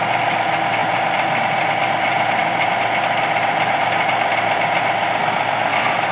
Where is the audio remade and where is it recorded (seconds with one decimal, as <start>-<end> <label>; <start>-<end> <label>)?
0.0-6.1 recorded